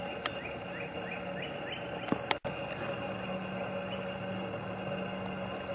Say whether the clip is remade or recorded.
recorded